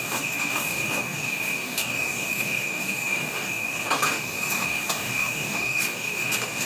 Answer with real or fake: fake